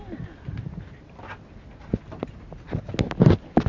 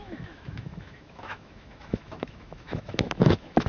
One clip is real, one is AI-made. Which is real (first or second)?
first